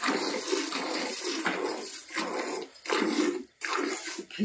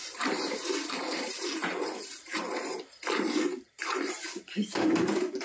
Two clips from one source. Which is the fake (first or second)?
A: second